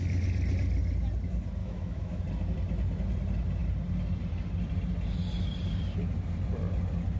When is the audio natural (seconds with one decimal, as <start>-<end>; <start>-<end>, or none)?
0.0-1.6; 2.2-7.2